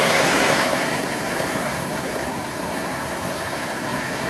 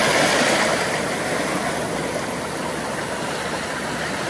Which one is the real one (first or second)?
second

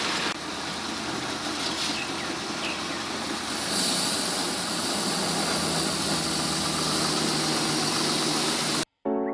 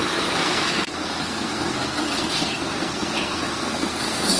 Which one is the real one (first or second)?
first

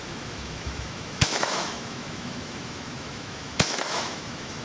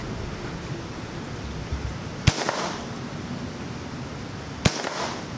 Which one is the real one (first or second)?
second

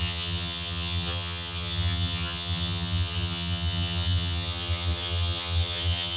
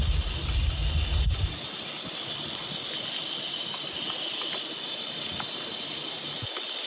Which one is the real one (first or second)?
second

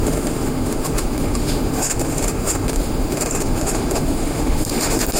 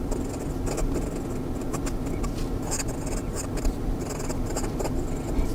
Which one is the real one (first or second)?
second